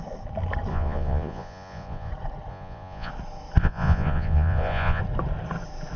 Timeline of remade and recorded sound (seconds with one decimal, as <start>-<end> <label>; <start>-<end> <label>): 0.0-0.7 recorded; 0.7-2.1 remade; 2.1-2.5 recorded; 2.5-3.1 remade; 3.1-3.6 recorded; 3.6-5.0 remade; 5.0-6.0 recorded